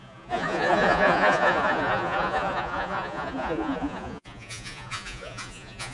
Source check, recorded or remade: remade